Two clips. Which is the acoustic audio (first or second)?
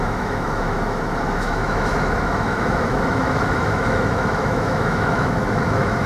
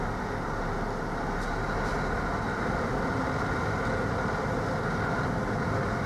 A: second